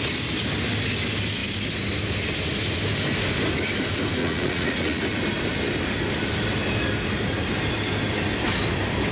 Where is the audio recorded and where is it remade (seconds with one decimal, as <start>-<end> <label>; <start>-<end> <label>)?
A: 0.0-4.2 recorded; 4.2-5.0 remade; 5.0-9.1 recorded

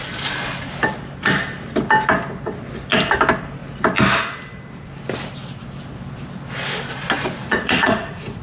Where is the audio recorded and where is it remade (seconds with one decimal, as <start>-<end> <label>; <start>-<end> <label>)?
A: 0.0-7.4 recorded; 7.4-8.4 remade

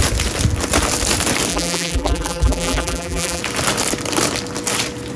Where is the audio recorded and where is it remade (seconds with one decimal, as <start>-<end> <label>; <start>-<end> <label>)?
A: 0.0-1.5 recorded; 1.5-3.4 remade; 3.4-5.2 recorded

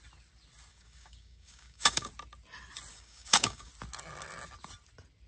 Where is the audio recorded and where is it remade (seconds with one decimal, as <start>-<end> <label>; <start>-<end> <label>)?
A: 0.0-0.7 recorded; 0.7-2.1 remade; 2.1-2.9 recorded; 2.9-3.7 remade; 3.7-5.3 recorded

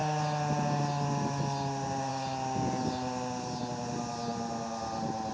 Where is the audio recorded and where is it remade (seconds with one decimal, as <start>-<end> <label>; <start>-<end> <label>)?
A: 0.0-5.3 recorded